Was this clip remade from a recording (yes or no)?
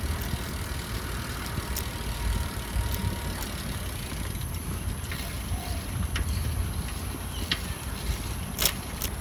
yes